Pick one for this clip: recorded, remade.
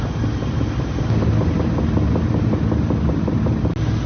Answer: recorded